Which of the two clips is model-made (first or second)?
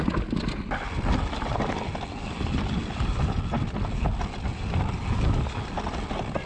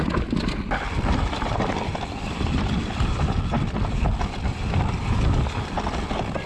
second